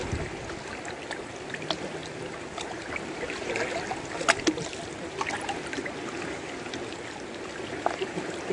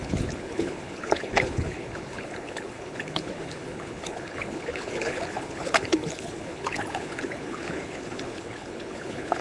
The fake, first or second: second